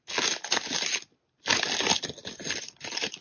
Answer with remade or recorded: recorded